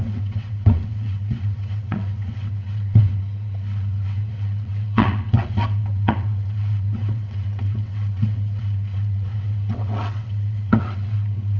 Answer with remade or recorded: remade